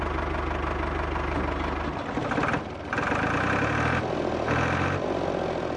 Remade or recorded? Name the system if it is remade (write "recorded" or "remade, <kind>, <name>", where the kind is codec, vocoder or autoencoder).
recorded